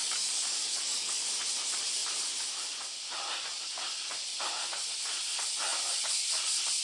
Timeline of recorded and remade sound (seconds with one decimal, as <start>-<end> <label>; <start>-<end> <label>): 0.0-1.3 remade; 1.3-6.8 recorded